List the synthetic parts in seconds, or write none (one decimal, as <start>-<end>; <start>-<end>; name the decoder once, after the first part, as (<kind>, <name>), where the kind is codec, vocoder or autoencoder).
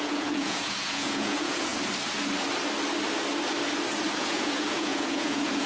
0.0-1.7 (vocoder, Vocos); 4.2-5.7